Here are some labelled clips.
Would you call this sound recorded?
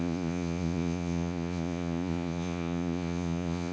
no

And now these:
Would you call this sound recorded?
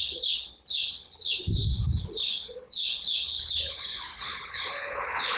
no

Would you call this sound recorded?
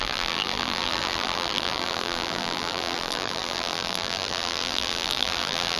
no